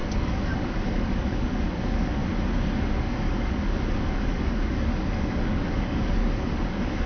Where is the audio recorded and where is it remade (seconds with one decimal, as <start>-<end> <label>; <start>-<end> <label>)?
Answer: 0.0-2.2 remade; 2.2-2.9 recorded; 2.9-7.1 remade